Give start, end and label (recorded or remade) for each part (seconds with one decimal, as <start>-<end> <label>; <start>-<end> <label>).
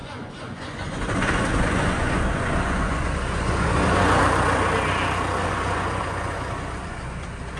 0.0-4.2 remade; 4.2-5.4 recorded; 5.4-7.6 remade